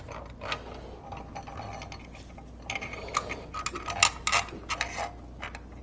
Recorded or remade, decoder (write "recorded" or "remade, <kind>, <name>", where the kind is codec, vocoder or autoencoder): recorded